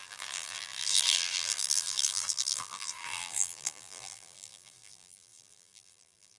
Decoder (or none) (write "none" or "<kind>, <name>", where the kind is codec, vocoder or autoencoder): vocoder, BigVGAN v2